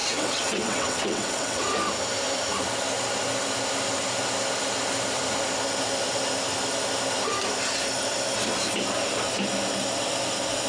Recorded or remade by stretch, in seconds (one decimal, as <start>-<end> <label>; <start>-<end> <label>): 0.0-1.6 remade; 1.6-10.7 recorded